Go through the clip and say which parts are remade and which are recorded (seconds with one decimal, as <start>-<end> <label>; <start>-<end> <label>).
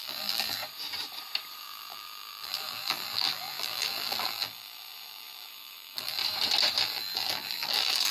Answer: 0.0-0.6 remade; 0.6-1.6 recorded; 1.6-6.2 remade; 6.2-6.8 recorded; 6.8-8.1 remade